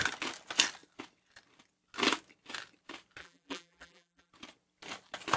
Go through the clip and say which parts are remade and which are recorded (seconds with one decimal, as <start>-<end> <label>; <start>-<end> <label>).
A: 0.0-3.2 recorded; 3.2-4.3 remade; 4.3-5.4 recorded